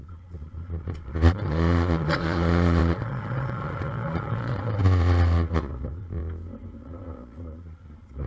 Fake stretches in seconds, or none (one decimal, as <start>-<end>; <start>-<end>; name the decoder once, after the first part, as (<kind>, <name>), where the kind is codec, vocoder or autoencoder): 0.0-6.2 (vocoder, Vocos); 6.8-8.3